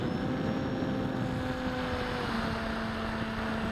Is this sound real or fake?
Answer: real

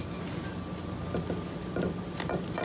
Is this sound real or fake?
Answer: real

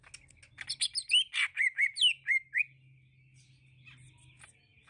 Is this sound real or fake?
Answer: real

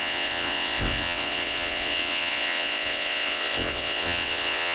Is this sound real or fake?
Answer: fake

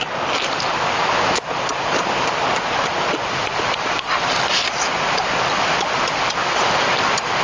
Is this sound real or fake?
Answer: real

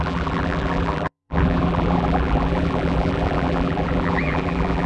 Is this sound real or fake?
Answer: fake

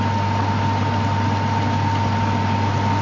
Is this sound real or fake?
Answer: real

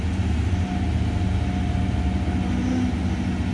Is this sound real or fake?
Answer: real